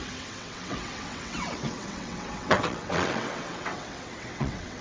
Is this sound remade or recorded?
remade